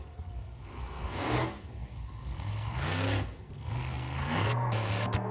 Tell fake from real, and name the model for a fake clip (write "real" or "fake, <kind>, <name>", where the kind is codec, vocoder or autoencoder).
fake, codec, SNAC